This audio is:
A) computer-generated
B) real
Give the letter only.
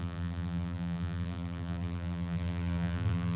A